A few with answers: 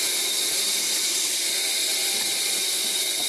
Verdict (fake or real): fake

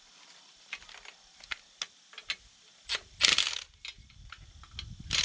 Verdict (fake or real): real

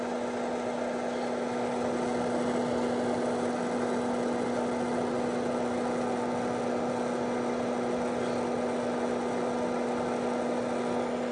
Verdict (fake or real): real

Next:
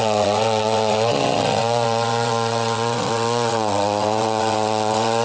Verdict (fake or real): fake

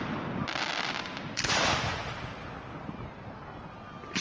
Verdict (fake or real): real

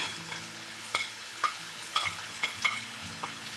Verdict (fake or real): fake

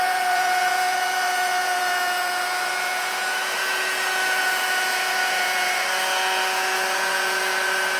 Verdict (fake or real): fake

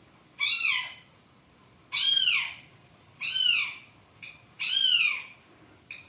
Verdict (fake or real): fake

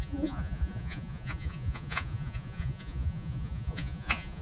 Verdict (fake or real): fake